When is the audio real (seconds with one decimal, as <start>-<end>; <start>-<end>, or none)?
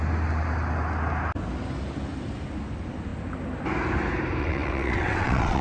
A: 0.0-4.4